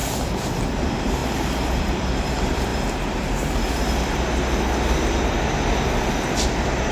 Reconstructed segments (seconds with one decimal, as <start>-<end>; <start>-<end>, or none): 0.6-1.2; 1.8-2.7; 6.1-6.9